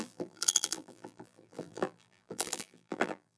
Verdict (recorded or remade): remade